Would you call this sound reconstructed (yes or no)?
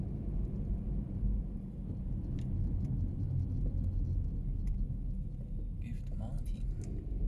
no